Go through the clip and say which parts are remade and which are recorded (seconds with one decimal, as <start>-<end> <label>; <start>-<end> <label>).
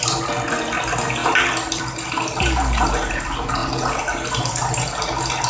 0.0-5.5 recorded